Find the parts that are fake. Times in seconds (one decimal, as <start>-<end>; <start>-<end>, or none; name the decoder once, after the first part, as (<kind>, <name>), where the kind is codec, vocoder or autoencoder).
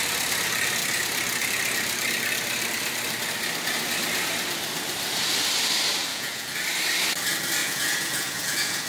6.1-6.6 (vocoder, Vocos); 7.6-8.9